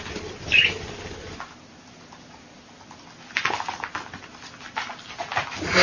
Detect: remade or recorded recorded